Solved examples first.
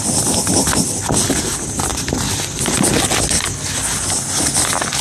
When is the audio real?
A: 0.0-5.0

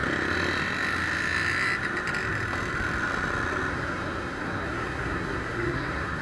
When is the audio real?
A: 0.0-3.7

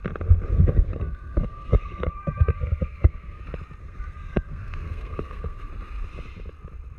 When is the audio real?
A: 0.0-0.5; 3.4-3.8; 5.7-7.0

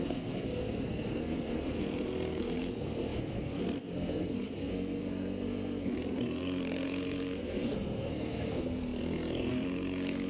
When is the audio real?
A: none

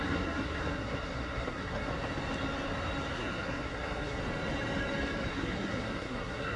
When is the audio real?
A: 1.9-3.1; 4.2-5.3

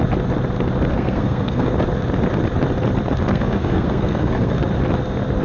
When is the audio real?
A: 0.0-0.9; 1.7-3.3; 4.5-5.4